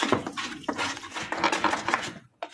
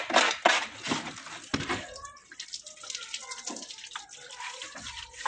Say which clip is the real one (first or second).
second